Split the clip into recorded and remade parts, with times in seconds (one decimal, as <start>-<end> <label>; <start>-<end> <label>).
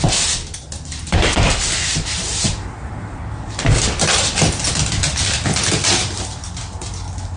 0.0-2.3 recorded; 2.3-2.9 remade; 2.9-7.4 recorded